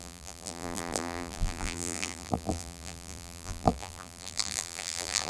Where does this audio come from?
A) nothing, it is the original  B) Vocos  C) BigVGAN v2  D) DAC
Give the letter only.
C